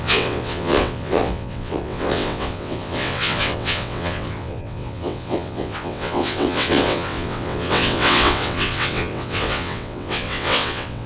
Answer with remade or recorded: remade